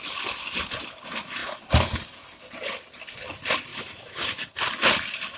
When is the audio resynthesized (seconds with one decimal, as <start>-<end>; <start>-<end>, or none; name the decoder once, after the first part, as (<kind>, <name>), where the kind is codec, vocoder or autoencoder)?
3.7-4.6 (autoencoder, DAC-VAE)